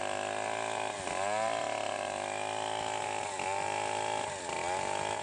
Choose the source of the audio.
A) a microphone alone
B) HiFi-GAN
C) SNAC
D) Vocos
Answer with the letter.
A